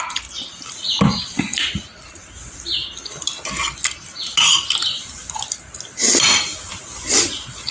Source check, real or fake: real